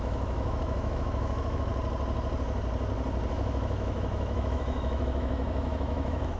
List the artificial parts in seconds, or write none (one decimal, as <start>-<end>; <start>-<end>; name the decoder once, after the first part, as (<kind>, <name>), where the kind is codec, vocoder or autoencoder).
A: 0.0-1.7 (autoencoder, DAC-VAE); 3.3-6.4